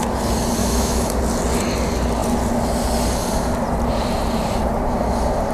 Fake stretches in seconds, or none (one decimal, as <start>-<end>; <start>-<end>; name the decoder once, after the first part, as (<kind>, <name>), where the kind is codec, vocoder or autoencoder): 0.6-1.2 (autoencoder, DAC-VAE)